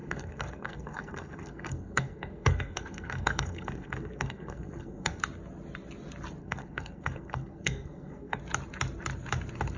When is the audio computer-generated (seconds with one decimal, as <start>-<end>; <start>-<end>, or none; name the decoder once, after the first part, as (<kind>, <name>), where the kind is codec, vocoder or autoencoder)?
0.0-5.2 (codec, SNAC); 6.4-8.4